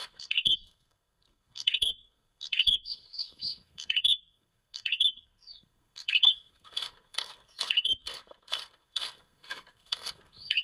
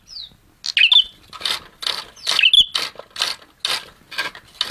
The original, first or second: second